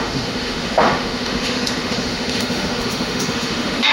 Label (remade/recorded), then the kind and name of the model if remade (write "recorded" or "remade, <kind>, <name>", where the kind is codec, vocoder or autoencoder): remade, autoencoder, DAC-VAE